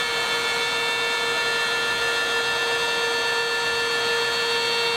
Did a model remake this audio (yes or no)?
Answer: no